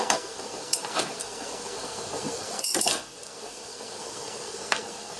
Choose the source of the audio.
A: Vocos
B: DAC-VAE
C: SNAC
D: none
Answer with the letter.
C